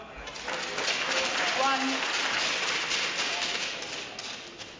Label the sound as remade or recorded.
recorded